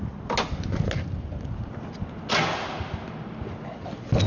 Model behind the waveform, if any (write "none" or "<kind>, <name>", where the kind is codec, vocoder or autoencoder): none